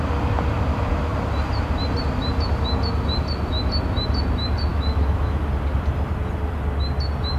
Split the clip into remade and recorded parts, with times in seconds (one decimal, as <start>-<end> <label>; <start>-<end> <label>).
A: 0.0-4.7 recorded; 4.7-5.4 remade; 5.4-7.4 recorded

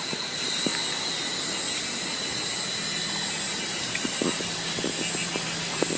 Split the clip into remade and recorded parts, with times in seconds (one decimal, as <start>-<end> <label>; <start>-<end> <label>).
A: 0.0-0.7 remade; 0.7-3.6 recorded; 3.6-6.0 remade